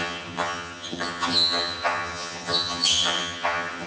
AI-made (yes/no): yes